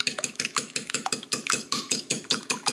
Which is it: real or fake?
fake